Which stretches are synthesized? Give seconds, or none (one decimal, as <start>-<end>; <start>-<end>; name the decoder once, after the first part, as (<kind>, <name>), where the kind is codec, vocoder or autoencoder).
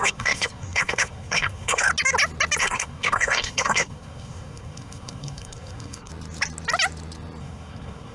0.0-1.9 (codec, SNAC); 2.6-6.1; 7.4-8.1